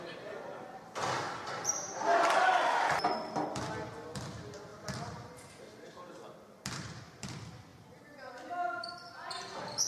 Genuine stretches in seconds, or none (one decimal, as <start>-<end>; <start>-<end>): 0.0-9.9